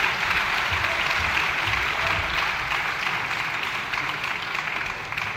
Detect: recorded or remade recorded